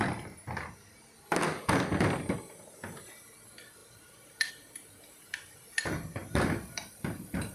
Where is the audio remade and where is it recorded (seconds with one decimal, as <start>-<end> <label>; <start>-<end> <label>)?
0.0-3.8 recorded; 3.8-4.5 remade; 4.5-6.2 recorded; 6.2-7.5 remade